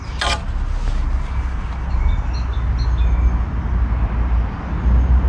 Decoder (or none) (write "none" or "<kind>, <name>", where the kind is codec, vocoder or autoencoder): none